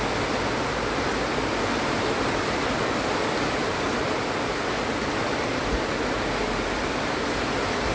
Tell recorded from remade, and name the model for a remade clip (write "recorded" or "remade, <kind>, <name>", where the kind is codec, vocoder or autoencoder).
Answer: recorded